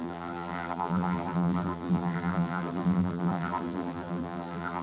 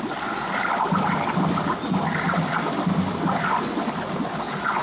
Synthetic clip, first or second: first